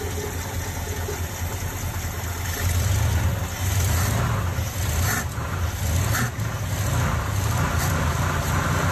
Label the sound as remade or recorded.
recorded